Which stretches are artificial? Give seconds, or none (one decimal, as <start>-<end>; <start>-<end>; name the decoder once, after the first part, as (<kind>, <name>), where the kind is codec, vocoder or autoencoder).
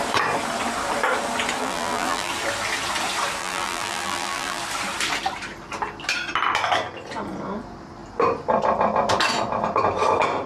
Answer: 1.6-2.3 (vocoder, BigVGAN v2); 3.4-4.6